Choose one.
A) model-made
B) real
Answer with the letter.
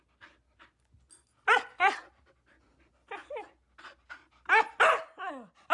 B